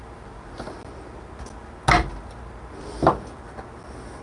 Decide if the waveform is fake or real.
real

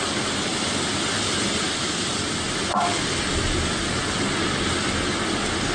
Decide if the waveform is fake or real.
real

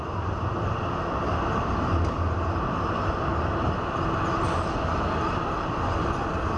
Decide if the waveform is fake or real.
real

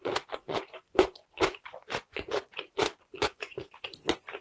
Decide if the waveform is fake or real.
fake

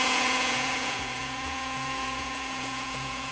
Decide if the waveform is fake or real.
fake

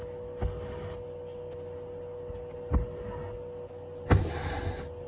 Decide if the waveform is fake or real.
real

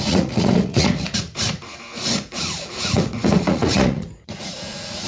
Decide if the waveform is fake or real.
fake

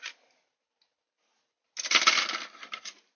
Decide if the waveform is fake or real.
real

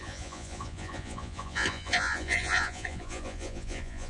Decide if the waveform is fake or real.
fake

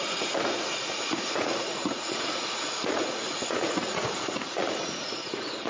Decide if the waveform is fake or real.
fake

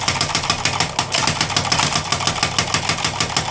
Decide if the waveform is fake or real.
real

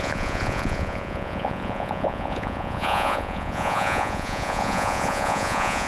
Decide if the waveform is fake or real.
fake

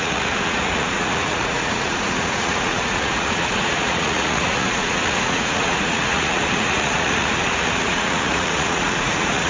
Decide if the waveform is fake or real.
fake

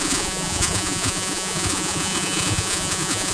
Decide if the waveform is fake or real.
fake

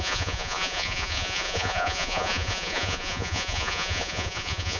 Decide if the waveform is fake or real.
fake